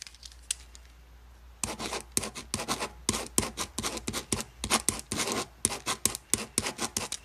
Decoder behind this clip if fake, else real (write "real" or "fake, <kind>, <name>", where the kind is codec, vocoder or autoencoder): real